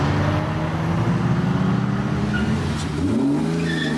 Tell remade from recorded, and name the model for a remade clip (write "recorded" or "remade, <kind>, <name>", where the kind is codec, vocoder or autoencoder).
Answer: recorded